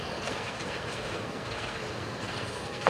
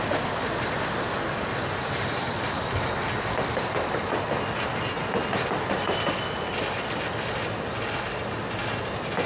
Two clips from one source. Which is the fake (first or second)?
first